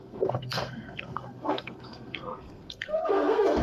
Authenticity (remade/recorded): remade